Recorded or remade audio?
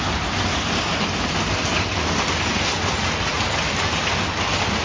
recorded